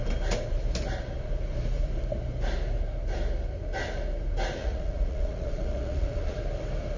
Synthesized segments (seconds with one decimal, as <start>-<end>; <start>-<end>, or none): 4.6-6.4